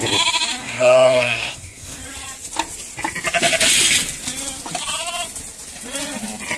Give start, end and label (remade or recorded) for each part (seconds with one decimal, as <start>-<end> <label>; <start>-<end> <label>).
0.0-0.6 recorded; 0.6-2.0 remade; 2.0-6.6 recorded